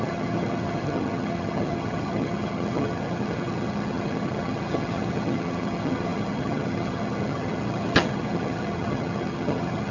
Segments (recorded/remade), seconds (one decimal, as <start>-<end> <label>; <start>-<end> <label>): 0.0-9.9 remade